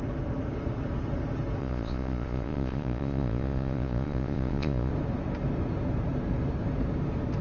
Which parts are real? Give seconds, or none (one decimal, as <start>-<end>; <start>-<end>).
0.0-1.6; 4.9-7.4